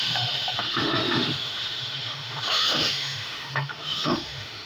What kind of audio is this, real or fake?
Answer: fake